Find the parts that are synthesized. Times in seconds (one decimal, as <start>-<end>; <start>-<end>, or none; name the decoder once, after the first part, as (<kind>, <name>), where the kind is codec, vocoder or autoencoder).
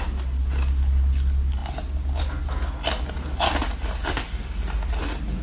none